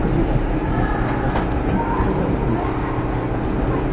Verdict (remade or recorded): recorded